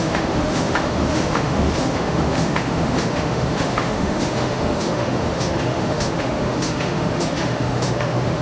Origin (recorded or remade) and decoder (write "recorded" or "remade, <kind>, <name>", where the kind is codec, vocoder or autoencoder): remade, autoencoder, DAC-VAE